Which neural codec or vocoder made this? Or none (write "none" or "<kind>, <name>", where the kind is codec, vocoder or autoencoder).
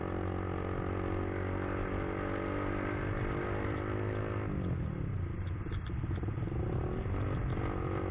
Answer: none